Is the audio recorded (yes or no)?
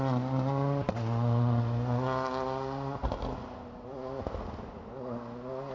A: yes